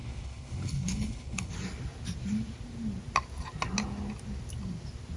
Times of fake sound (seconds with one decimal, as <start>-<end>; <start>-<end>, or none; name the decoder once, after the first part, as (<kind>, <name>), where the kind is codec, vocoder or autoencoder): 0.0-1.5 (codec, HILCodec)